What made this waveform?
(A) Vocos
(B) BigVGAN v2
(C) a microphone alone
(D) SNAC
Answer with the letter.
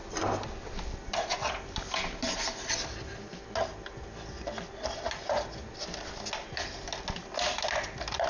C